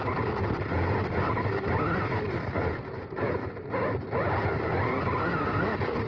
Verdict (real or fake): real